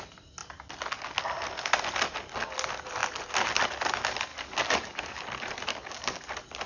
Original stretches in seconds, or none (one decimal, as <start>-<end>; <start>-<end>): 0.0-4.3; 5.2-5.7; 6.2-6.7